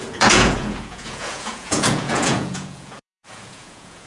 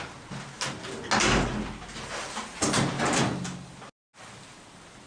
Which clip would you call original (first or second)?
second